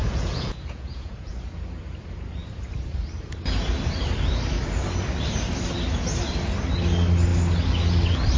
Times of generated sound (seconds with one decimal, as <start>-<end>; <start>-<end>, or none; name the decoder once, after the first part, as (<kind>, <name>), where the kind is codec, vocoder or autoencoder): 0.0-1.3 (vocoder, Vocos)